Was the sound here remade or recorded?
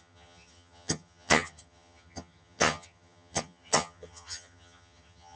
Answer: remade